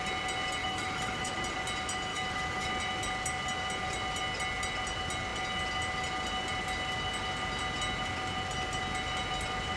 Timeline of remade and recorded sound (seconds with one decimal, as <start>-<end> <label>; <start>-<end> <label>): 0.0-0.6 recorded; 0.6-1.3 remade; 1.3-2.1 recorded; 2.1-2.7 remade; 2.7-9.8 recorded